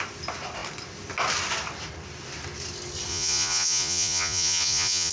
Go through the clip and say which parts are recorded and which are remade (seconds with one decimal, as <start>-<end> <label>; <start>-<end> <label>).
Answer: 0.0-3.1 recorded; 3.1-5.1 remade